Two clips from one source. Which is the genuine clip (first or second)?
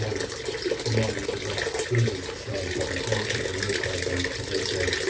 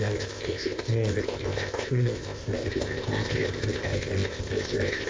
first